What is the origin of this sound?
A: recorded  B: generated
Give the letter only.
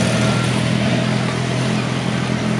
A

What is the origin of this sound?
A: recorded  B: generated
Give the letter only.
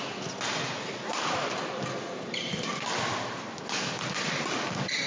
A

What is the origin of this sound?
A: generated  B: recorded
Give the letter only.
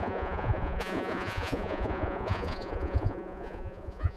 A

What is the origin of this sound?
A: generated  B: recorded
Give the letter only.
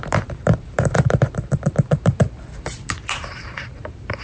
A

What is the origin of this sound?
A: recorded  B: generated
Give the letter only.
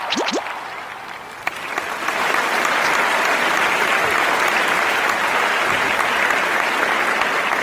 A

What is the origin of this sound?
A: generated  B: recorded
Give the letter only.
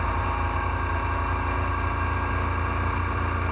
B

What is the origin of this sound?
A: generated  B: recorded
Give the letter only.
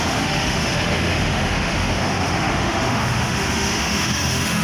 A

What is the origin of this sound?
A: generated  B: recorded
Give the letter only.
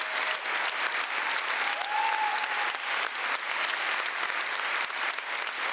B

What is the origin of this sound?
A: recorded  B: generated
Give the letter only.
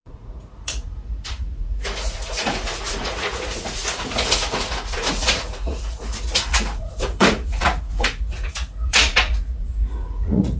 B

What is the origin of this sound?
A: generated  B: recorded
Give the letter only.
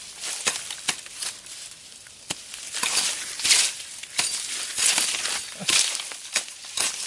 B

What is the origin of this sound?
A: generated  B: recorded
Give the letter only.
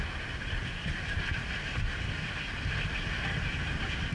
B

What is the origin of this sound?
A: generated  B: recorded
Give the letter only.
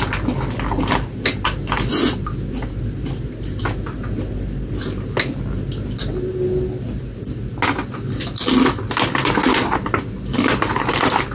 B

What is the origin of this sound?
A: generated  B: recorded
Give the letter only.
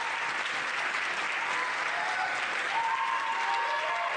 B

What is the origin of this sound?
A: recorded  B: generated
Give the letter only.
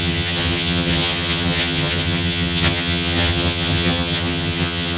B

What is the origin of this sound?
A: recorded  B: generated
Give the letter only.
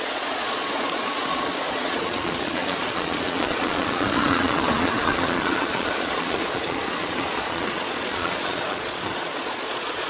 B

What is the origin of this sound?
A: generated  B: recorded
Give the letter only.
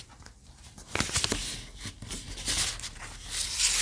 B